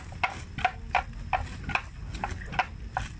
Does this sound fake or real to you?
real